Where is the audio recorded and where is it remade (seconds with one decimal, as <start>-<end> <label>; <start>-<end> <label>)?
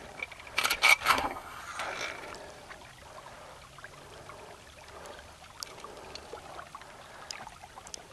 0.0-1.1 recorded; 1.1-1.6 remade; 1.6-8.1 recorded